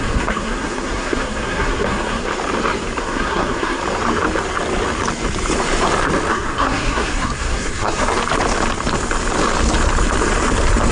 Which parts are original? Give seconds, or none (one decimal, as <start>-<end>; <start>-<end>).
2.3-3.0; 3.8-6.3; 8.1-10.9